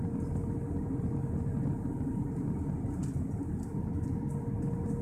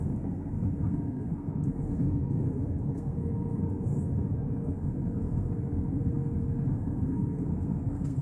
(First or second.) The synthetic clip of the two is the second